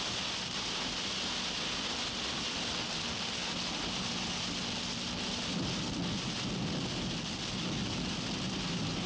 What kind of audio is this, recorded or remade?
recorded